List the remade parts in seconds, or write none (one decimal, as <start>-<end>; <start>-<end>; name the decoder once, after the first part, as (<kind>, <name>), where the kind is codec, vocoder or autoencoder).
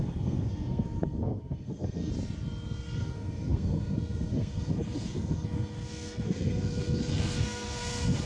0.0-2.1 (codec, SNAC); 3.0-8.3